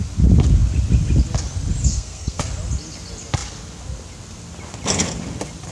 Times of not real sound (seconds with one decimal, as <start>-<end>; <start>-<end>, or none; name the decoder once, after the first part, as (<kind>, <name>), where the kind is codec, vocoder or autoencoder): 1.8-2.4 (codec, SNAC)